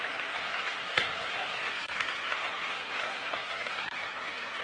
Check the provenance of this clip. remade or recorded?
remade